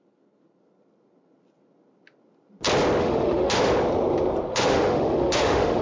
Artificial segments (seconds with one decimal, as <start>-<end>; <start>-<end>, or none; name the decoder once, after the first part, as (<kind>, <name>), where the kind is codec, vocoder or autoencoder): 3.0-3.7 (autoencoder, DAC-VAE); 4.5-5.8